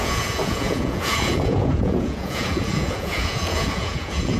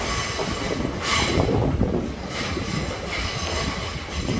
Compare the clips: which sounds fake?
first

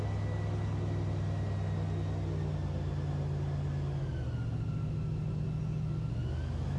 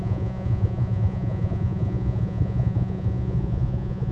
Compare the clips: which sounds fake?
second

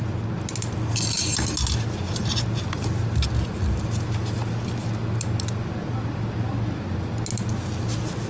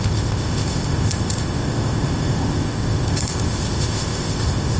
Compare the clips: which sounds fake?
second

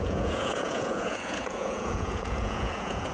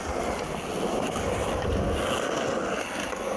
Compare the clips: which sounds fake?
first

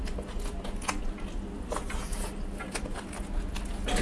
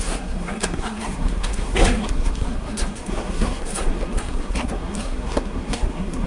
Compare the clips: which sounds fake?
second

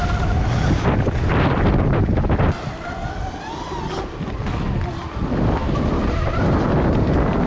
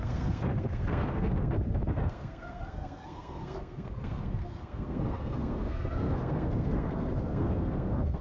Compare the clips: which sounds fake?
second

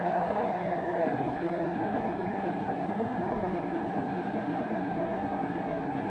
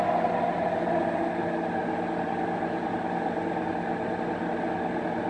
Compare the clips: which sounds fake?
first